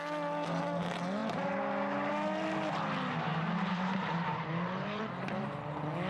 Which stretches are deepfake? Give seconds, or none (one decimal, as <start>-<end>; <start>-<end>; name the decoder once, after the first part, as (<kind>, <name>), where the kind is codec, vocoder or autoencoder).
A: 3.3-5.0 (vocoder, BigVGAN v2)